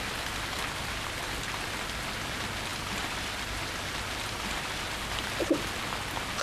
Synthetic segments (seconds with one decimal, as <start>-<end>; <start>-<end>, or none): 2.7-4.9